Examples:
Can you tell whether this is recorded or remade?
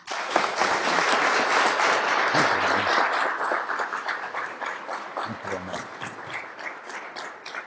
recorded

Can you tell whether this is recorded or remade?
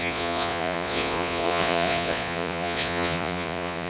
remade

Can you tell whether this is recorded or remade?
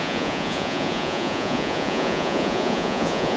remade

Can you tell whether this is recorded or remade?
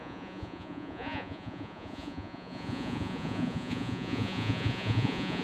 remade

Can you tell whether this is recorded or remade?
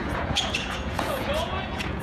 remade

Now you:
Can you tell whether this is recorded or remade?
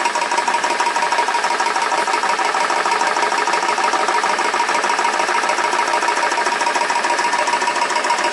recorded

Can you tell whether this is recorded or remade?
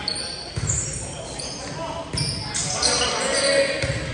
recorded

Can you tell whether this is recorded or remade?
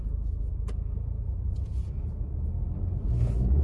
recorded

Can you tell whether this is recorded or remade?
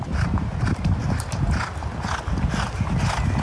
recorded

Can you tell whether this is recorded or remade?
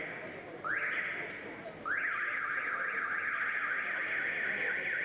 recorded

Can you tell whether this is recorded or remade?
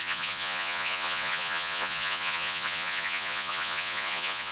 remade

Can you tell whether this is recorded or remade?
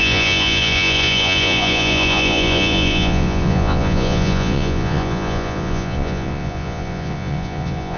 remade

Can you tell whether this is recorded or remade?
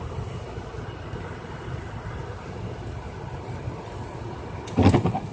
recorded